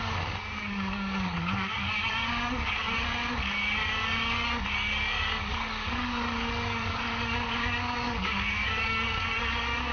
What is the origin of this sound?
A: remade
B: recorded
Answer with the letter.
A